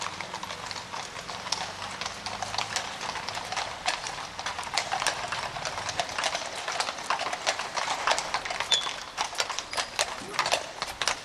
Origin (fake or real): real